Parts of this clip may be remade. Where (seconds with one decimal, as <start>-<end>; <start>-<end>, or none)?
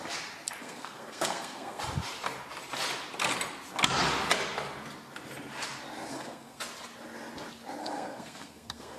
0.6-1.8; 6.1-6.6; 7.8-9.0